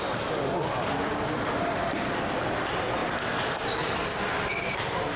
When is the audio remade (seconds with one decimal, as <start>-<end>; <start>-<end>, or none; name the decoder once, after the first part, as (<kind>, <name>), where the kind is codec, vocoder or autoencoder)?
none